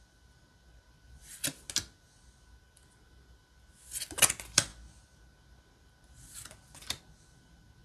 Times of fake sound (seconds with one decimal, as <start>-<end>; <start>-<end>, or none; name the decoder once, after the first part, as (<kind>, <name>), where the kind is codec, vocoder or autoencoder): none